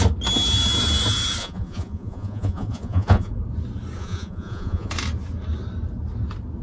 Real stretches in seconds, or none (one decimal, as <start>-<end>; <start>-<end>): 0.0-1.4; 3.3-4.0; 4.9-6.6